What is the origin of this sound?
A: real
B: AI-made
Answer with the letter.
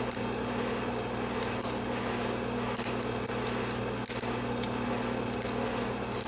A